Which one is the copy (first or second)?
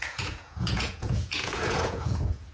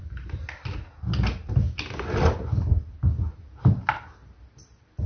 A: first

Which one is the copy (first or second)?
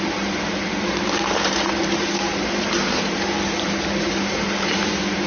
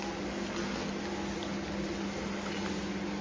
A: first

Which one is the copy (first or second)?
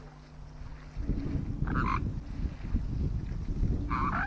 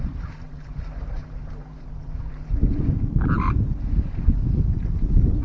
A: second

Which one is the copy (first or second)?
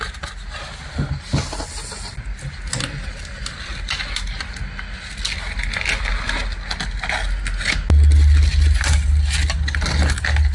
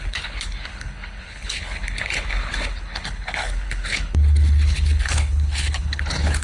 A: second